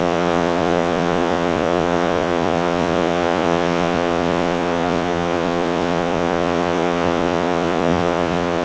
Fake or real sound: fake